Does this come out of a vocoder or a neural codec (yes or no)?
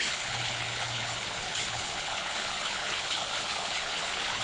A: yes